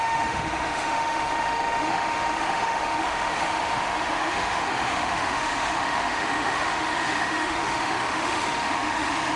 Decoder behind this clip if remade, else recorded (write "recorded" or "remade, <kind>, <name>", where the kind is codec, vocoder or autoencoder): remade, autoencoder, DAC-VAE